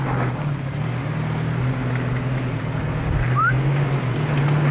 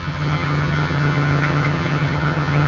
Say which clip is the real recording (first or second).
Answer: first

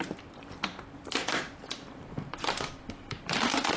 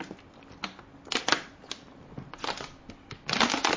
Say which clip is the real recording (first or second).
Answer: second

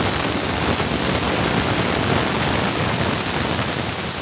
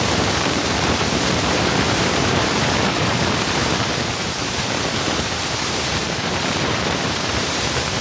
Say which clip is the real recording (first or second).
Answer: first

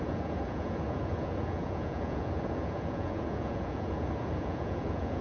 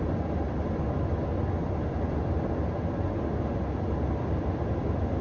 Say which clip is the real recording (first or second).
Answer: second